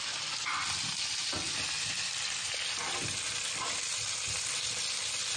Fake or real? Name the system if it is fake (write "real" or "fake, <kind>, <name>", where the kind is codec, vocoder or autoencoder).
real